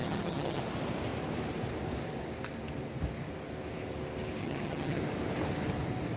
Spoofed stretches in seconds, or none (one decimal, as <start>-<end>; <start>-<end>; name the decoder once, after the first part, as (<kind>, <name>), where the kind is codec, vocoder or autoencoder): 0.0-0.6 (vocoder, HiFi-GAN); 4.4-5.0